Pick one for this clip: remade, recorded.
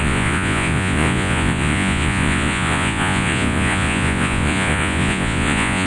remade